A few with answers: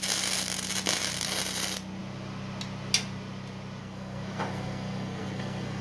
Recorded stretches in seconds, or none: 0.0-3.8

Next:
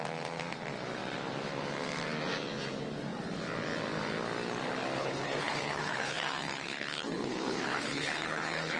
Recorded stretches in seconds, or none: 0.0-5.0

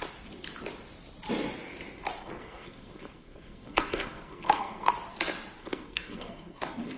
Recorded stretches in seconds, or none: 0.0-2.2; 4.9-5.6

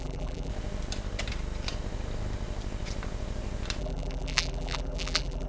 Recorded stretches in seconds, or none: 0.5-3.8

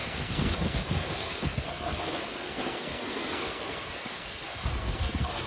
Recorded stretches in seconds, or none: none

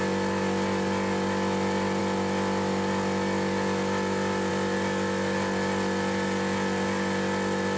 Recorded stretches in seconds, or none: 0.0-7.8

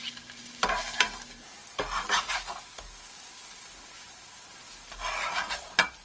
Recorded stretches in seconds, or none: 0.0-6.0

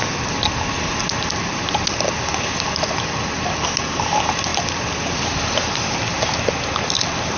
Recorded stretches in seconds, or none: 0.0-7.4